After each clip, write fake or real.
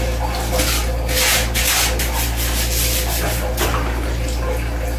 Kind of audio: real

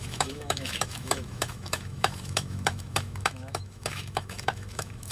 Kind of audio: fake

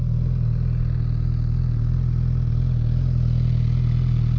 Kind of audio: real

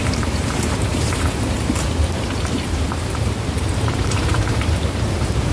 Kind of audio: fake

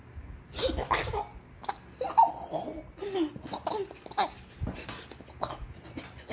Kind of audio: real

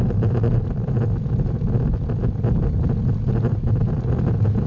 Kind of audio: real